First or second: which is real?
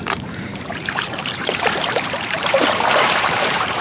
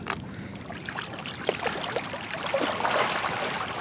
second